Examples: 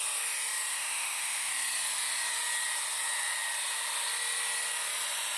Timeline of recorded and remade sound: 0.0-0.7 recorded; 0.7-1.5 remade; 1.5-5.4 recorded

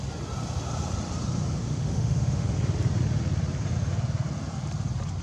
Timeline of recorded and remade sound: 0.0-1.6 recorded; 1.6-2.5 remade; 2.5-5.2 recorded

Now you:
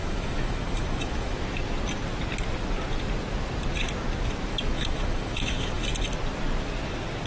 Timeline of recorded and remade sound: 0.0-1.4 remade; 1.4-4.5 recorded; 4.5-5.8 remade; 5.8-7.3 recorded

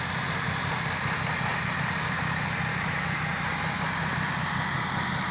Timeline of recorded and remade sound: 0.0-2.7 recorded; 2.7-3.2 remade; 3.2-5.3 recorded